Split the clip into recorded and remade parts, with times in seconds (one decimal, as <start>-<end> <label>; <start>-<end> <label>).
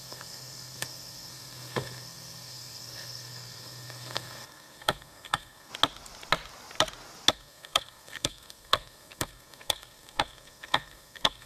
0.0-5.7 remade; 5.7-7.3 recorded; 7.3-11.5 remade